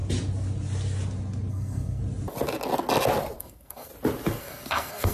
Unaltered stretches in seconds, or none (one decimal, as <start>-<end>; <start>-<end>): 0.0-1.5; 2.0-3.4; 3.9-4.4